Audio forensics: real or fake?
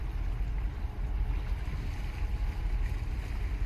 real